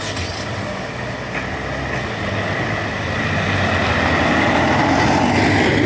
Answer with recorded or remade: recorded